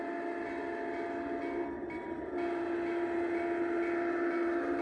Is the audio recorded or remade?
recorded